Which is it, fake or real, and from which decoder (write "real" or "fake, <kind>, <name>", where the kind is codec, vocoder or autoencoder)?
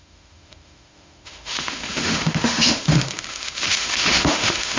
fake, autoencoder, DAC-VAE